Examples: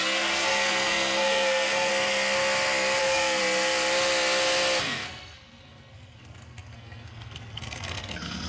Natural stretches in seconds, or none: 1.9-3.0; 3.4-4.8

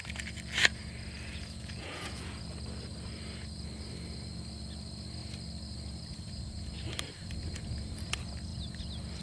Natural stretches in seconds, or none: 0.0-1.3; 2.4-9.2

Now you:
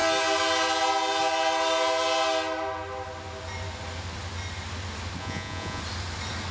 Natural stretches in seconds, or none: 0.0-5.2; 5.8-6.5

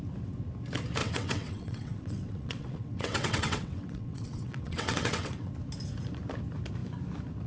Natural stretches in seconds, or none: 0.0-1.0; 5.5-7.5

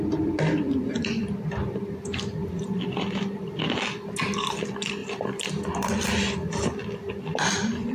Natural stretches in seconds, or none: 0.0-2.4; 3.8-5.0; 7.1-7.9

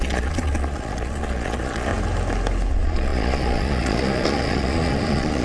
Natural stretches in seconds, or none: 1.9-2.7

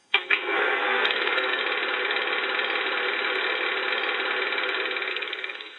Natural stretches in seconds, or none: 1.6-5.1